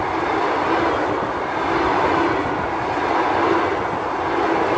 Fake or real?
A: real